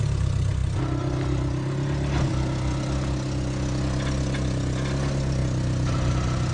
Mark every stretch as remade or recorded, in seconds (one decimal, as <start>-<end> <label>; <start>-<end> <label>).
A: 0.0-6.5 recorded